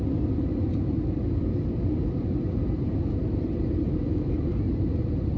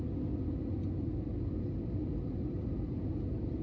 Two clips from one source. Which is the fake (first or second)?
first